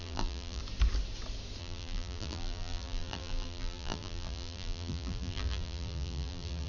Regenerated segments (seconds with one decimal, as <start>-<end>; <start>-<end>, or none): 0.0-0.6; 1.6-6.7